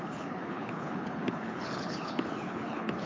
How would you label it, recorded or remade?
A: remade